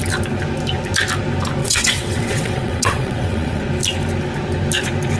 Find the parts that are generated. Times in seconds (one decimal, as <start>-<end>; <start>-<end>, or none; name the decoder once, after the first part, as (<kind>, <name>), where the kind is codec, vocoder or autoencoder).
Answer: 1.6-3.6 (vocoder, WaveNeXt)